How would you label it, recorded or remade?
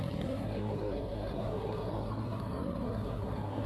remade